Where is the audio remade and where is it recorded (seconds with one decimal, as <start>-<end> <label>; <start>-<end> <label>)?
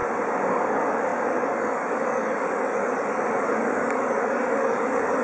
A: 0.0-0.5 recorded; 0.5-5.2 remade